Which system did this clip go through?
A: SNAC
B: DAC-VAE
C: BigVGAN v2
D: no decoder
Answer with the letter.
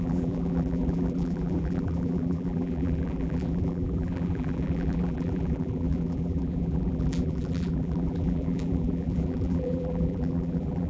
C